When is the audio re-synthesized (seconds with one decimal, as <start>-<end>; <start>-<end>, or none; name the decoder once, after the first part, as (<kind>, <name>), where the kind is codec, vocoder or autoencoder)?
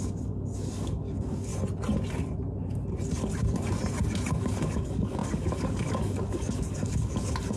0.0-1.5 (codec, DAC); 4.3-7.6